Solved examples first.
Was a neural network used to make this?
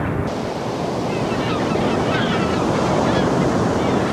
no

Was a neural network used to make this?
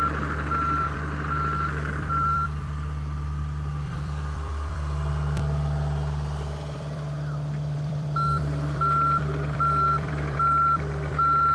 yes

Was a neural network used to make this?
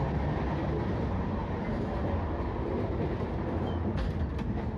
no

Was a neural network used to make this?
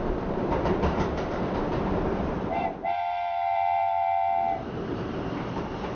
yes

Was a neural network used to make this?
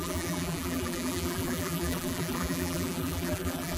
yes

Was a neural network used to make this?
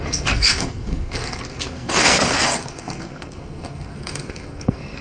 yes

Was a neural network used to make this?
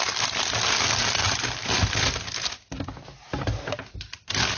no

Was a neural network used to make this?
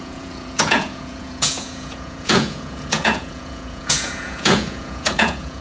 yes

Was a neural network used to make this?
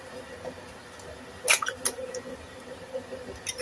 no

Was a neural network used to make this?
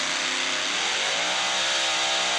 no